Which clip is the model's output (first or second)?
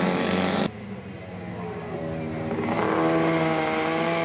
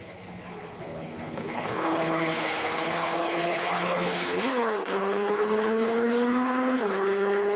second